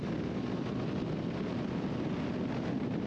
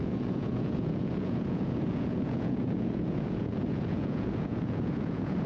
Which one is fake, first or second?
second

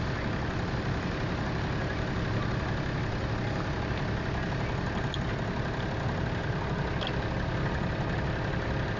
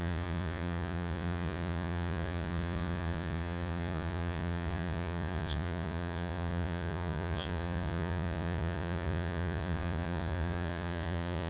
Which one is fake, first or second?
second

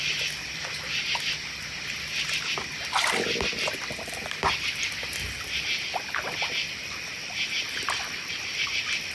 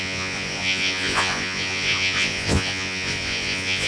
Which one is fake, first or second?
second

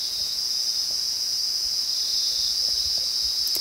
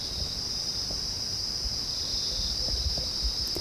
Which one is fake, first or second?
first